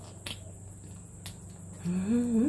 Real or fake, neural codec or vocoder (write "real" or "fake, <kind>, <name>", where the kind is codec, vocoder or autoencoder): real